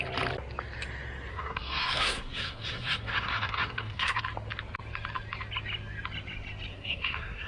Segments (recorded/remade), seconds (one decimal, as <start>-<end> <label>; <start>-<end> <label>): 0.0-1.3 recorded; 1.3-4.2 remade; 4.2-6.7 recorded; 6.7-7.5 remade